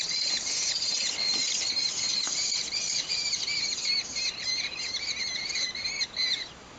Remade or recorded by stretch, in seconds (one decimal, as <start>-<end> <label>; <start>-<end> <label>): 0.0-6.8 recorded